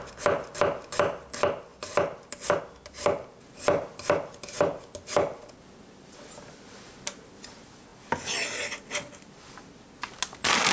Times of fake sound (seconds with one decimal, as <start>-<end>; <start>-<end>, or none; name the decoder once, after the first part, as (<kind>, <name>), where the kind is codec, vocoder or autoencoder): none